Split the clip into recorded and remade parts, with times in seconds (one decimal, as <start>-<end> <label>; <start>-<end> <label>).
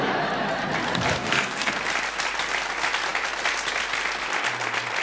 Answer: 0.0-1.2 recorded; 1.2-1.7 remade; 1.7-5.0 recorded